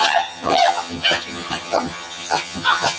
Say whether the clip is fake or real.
fake